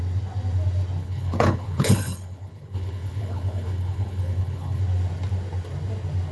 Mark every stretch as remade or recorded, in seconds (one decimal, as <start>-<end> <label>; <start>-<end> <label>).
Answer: 0.0-1.0 recorded; 1.0-4.8 remade; 4.8-6.3 recorded